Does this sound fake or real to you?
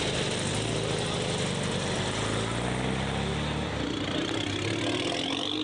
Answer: real